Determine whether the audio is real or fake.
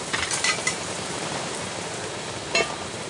fake